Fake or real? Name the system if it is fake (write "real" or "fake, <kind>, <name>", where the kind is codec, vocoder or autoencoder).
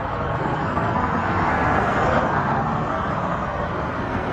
fake, codec, SNAC